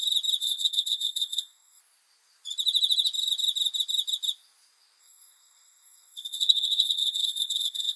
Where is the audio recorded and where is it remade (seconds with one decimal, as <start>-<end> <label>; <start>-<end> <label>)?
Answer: 0.0-0.4 recorded; 0.4-1.8 remade; 1.8-5.0 recorded; 5.0-8.0 remade